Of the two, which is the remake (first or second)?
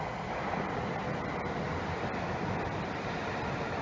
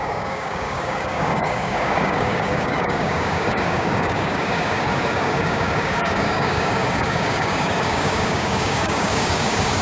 second